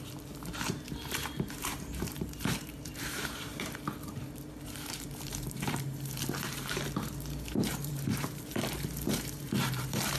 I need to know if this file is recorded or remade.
remade